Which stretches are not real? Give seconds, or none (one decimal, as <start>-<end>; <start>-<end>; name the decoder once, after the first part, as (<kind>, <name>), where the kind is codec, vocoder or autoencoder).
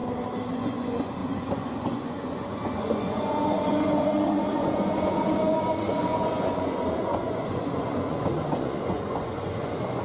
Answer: 0.5-10.0 (vocoder, Vocos)